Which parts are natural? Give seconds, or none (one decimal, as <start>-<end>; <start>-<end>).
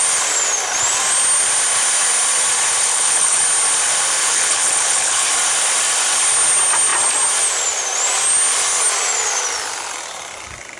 0.0-2.8; 3.4-4.2; 5.3-10.8